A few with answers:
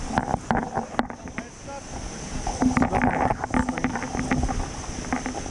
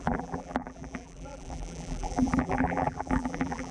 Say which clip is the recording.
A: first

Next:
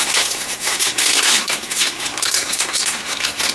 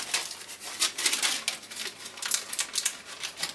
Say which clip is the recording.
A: second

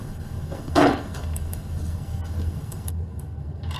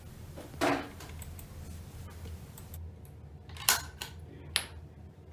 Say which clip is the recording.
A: second